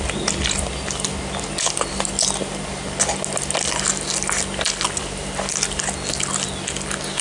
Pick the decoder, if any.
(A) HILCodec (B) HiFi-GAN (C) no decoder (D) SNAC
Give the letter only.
C